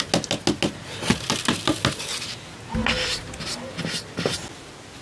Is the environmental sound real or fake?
real